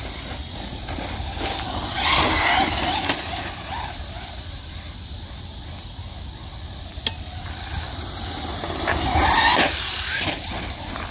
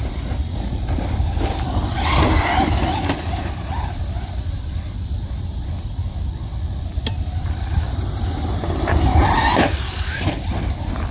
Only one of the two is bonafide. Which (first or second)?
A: first